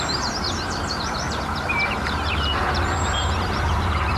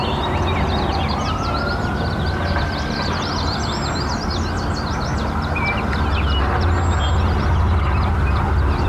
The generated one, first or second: first